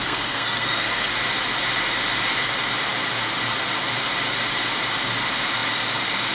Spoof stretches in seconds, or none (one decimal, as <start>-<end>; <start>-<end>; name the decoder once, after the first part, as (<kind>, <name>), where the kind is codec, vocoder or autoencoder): 0.0-1.1 (codec, SNAC)

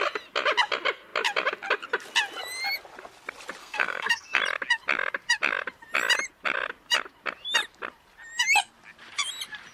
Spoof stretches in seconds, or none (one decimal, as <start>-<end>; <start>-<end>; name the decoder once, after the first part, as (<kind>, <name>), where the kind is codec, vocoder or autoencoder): 3.6-4.4 (codec, SNAC)

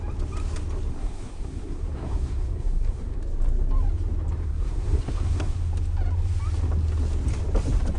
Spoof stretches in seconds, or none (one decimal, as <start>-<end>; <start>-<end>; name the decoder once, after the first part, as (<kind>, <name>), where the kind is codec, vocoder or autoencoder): 0.9-3.2 (codec, SNAC); 4.4-5.7

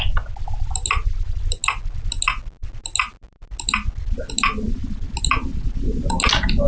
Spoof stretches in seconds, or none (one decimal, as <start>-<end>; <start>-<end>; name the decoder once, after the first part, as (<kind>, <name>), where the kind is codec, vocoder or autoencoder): none

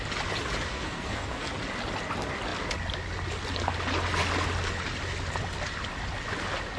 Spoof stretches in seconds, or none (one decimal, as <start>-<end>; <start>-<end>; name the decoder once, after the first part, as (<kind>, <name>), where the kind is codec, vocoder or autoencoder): 0.7-1.5 (codec, SNAC)

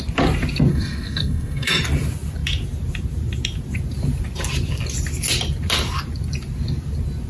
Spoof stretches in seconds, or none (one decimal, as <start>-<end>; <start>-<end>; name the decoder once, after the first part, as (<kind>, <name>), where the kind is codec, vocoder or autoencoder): 0.7-1.7 (codec, SNAC)